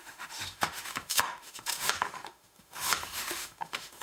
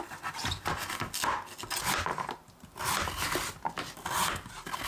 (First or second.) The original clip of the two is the second